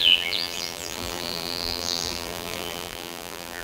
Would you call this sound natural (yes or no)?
no